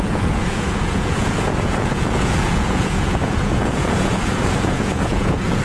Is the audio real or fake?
fake